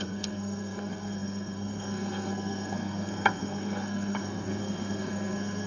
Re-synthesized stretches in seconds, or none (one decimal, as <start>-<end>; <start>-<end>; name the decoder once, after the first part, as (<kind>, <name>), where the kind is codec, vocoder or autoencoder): 0.0-5.7 (codec, SNAC)